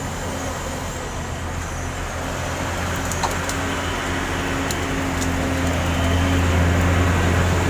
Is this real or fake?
real